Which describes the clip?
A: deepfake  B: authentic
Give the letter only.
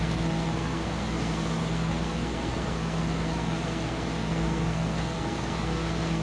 A